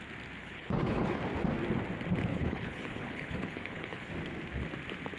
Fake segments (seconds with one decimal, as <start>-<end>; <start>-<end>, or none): 0.4-1.2; 2.3-4.1

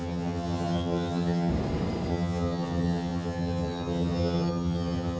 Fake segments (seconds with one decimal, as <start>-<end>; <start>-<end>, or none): 0.0-1.5; 2.1-5.2